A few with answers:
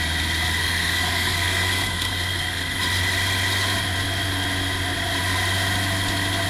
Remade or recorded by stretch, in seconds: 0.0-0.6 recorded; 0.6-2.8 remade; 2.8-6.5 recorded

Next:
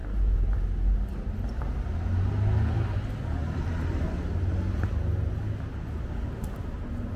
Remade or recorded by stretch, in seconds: 0.0-0.6 remade; 0.6-3.4 recorded; 3.4-4.1 remade; 4.1-7.2 recorded

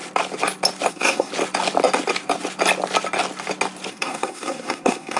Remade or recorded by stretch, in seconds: 0.0-0.9 recorded; 0.9-1.3 remade; 1.3-3.9 recorded; 3.9-5.2 remade